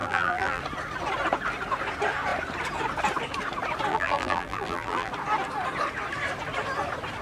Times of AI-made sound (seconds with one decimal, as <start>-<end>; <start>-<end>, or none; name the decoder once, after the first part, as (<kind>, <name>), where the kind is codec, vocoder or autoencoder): 0.0-0.6 (vocoder, BigVGAN v2); 3.9-5.1